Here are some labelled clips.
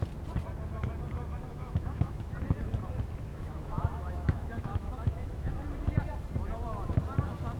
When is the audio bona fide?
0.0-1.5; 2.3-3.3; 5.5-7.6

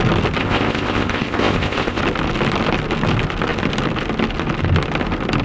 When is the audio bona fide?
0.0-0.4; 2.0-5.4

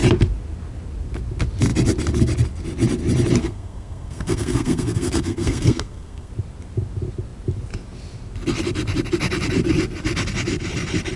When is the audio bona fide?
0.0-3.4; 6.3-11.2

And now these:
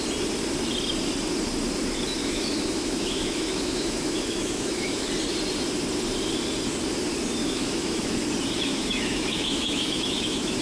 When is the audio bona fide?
0.0-2.2; 5.1-7.4; 8.1-8.7